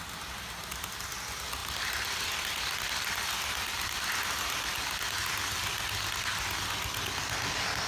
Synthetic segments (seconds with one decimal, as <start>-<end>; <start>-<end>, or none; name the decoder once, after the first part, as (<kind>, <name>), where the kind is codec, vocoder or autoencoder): 1.6-4.0 (vocoder, BigVGAN v2)